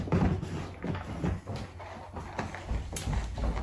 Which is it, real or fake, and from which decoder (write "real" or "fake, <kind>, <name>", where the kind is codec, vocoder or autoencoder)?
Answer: real